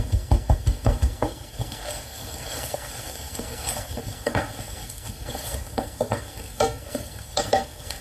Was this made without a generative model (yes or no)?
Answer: no